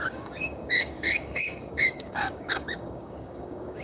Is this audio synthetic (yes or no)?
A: yes